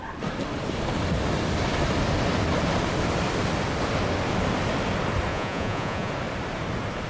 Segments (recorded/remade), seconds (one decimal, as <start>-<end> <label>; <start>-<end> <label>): 0.0-5.3 recorded; 5.3-6.1 remade; 6.1-7.1 recorded